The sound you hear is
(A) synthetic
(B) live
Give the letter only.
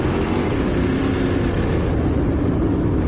B